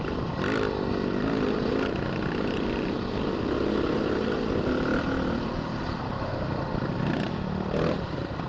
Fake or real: fake